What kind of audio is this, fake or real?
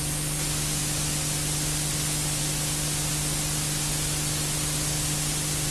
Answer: real